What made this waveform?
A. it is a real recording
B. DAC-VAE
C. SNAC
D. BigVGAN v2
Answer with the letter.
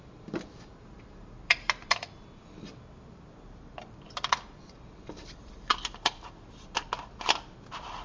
D